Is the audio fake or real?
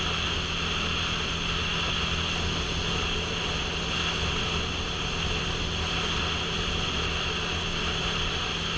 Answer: real